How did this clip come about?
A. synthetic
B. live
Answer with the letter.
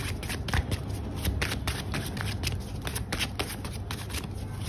B